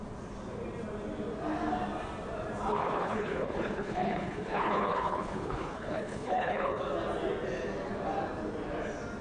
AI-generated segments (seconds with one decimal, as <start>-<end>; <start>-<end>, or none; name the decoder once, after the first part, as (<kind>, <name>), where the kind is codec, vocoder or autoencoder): 2.7-6.8 (codec, HILCodec)